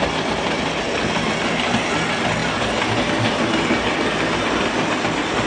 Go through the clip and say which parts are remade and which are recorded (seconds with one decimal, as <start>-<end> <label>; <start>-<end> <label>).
0.0-5.5 recorded